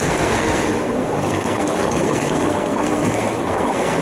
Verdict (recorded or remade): remade